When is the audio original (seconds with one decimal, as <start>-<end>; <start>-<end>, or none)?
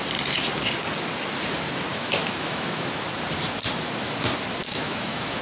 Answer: 0.0-1.9; 2.9-4.6